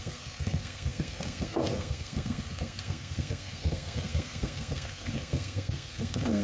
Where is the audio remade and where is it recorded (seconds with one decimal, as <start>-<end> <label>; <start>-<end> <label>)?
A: 0.0-6.4 remade